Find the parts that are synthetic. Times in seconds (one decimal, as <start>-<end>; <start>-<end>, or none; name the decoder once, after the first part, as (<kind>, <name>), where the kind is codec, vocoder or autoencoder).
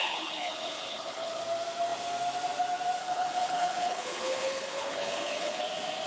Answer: 0.0-1.4 (codec, HILCodec); 3.0-5.6